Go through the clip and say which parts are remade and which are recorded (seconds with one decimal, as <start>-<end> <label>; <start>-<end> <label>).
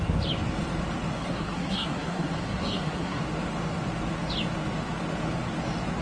0.0-1.2 recorded; 1.2-3.2 remade; 3.2-6.0 recorded